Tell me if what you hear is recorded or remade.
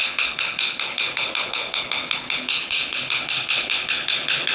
remade